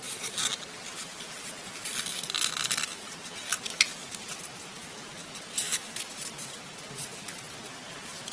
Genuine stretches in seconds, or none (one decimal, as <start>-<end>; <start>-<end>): 0.0-8.3